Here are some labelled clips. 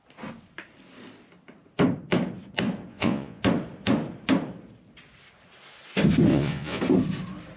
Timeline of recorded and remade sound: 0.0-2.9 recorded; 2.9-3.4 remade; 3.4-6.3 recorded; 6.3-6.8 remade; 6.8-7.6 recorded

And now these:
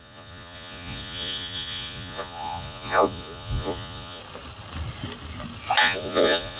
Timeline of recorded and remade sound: 0.0-4.2 remade; 4.2-5.8 recorded; 5.8-6.6 remade

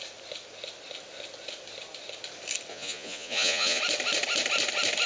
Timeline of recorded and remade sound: 0.0-2.7 recorded; 2.7-3.8 remade; 3.8-5.1 recorded

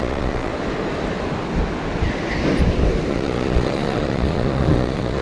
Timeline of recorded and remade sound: 0.0-0.5 remade; 0.5-3.1 recorded; 3.1-5.2 remade